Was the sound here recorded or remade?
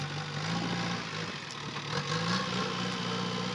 recorded